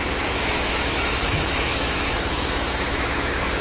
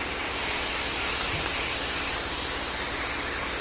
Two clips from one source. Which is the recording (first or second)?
second